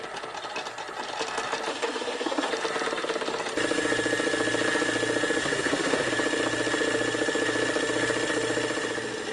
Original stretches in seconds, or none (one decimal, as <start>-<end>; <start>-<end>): 0.0-1.7; 2.5-5.4; 6.1-9.3